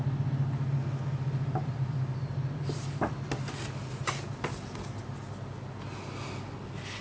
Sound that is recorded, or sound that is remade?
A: recorded